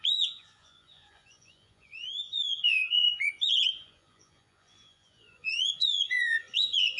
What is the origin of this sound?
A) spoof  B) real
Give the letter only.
A